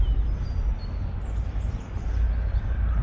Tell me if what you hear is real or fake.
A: real